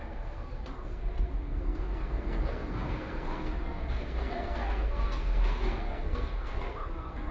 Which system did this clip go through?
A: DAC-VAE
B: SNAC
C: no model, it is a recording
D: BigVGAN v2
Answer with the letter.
B